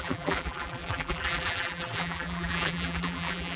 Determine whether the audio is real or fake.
fake